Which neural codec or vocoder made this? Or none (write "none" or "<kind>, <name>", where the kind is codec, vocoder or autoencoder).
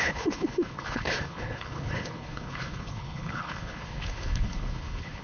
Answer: codec, HILCodec